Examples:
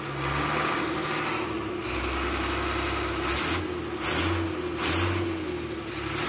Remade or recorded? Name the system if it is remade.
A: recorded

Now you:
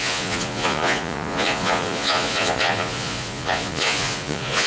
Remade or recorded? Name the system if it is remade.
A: remade, vocoder, Vocos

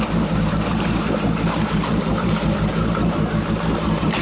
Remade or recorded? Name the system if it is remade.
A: remade, vocoder, BigVGAN v2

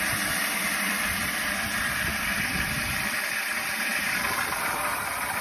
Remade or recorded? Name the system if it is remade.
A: remade, vocoder, BigVGAN v2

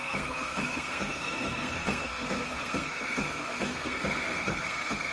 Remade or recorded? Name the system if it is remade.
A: remade, codec, SNAC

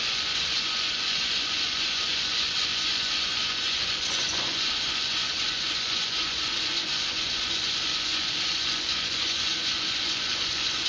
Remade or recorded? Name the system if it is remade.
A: remade, vocoder, Vocos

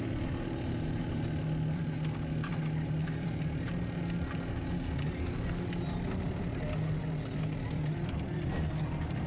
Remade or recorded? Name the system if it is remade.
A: recorded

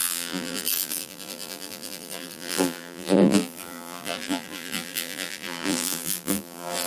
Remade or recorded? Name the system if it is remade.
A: remade, vocoder, BigVGAN v2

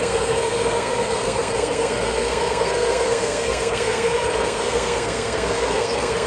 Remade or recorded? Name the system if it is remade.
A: remade, codec, SNAC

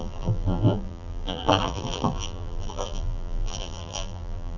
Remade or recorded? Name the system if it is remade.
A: remade, vocoder, BigVGAN v2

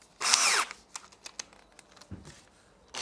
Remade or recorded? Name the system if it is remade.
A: recorded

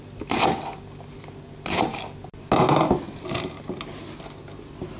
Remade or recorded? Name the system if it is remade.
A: recorded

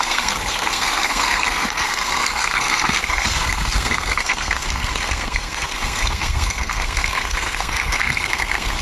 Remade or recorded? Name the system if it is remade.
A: remade, codec, SNAC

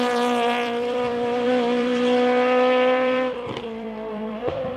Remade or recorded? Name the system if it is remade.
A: remade, vocoder, BigVGAN v2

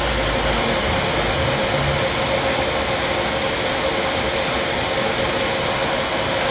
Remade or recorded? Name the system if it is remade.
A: recorded